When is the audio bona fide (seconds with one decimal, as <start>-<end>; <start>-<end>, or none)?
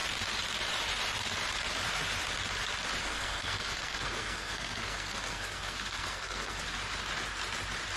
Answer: 0.0-3.0; 6.6-8.0